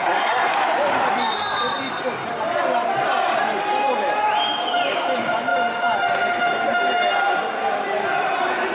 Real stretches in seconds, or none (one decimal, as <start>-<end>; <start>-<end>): 0.5-8.7